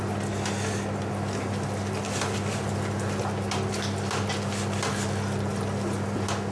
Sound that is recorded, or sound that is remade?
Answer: recorded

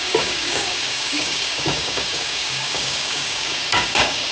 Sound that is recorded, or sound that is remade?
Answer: remade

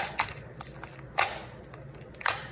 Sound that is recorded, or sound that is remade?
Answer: recorded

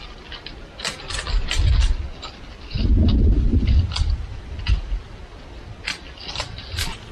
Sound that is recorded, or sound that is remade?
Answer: recorded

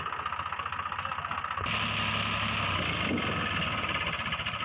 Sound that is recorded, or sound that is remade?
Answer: recorded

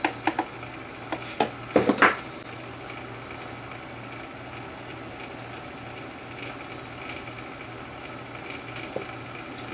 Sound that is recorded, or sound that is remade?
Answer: recorded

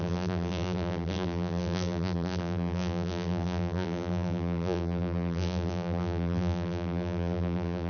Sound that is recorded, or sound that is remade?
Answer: remade